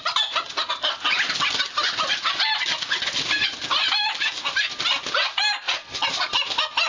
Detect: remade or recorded recorded